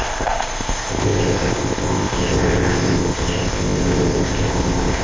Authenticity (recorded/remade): remade